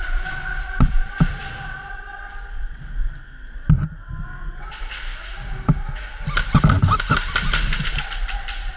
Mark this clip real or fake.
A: real